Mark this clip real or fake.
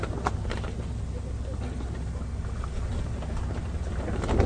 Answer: real